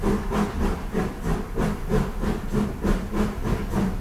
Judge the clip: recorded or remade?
recorded